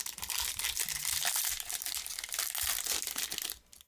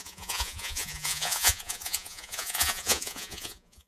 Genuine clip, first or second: first